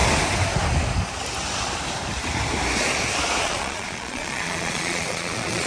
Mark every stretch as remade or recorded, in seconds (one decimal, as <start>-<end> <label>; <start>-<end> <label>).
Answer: 0.0-3.4 recorded; 3.4-5.7 remade